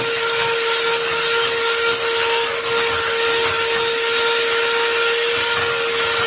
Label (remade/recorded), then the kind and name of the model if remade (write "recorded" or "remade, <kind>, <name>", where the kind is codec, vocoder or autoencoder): recorded